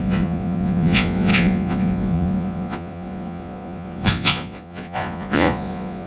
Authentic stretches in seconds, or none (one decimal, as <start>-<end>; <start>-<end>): none